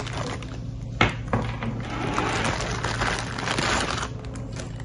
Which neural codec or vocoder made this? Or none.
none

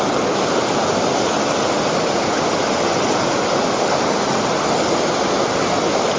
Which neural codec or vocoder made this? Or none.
none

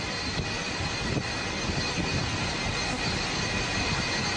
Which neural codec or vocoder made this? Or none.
none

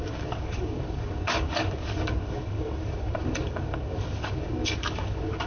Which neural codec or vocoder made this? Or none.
codec, DAC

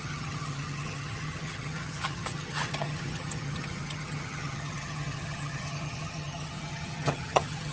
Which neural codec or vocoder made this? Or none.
vocoder, HiFi-GAN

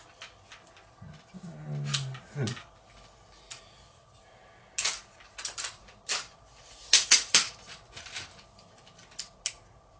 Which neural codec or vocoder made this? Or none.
none